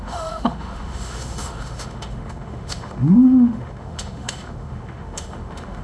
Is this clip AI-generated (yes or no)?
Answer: yes